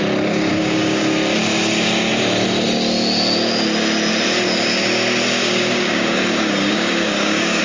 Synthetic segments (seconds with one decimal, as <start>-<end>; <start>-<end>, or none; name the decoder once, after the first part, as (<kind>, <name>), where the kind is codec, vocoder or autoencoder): 0.5-1.0 (codec, DAC); 5.4-7.6

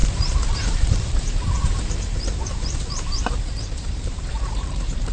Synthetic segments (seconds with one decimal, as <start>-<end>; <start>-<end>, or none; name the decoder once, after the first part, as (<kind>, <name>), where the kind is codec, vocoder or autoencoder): 0.0-5.1 (vocoder, BigVGAN v2)

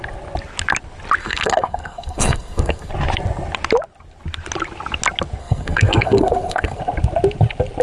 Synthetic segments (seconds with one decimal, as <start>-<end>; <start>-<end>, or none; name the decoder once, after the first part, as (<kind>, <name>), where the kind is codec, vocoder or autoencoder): 1.2-2.9 (codec, SNAC); 5.4-6.8

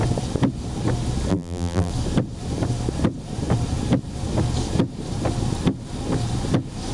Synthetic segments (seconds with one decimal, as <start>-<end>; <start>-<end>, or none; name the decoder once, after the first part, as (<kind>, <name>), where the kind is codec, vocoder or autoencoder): 1.3-1.9 (vocoder, BigVGAN v2)